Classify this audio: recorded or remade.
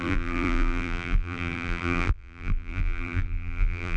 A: remade